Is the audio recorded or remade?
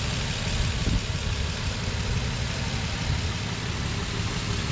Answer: recorded